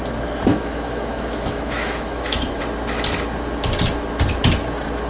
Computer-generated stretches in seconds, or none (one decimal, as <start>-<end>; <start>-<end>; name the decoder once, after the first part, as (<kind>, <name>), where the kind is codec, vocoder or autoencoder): 0.5-2.6 (autoencoder, DAC-VAE)